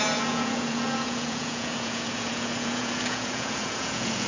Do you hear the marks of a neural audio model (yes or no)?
yes